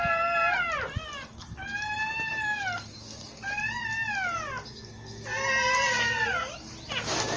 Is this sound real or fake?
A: real